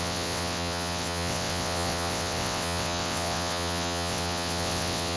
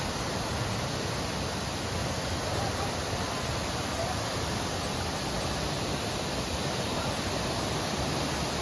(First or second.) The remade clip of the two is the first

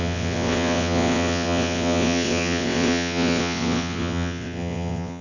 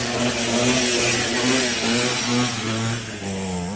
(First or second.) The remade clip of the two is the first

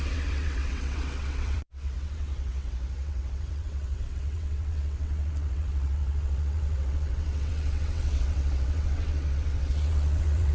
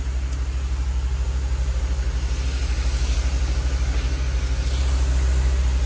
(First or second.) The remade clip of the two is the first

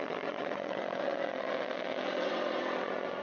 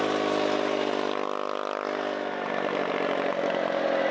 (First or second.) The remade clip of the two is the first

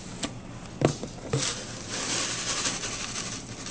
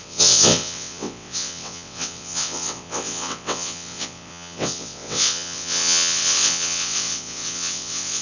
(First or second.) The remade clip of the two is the second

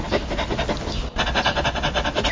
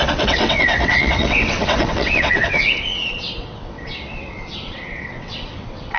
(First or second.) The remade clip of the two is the second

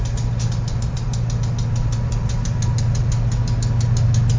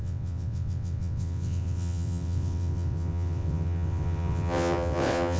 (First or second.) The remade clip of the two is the second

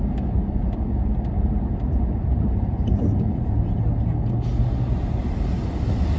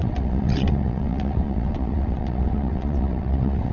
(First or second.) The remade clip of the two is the second